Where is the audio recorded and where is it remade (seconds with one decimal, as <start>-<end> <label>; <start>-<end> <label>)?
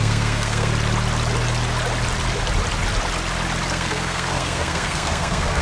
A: 0.0-0.7 remade; 0.7-3.7 recorded; 3.7-5.6 remade